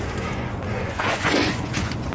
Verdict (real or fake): fake